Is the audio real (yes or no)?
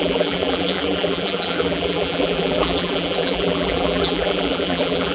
no